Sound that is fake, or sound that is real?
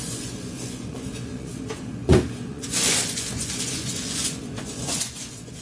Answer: fake